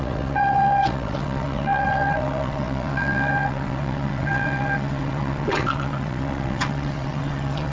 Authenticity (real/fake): fake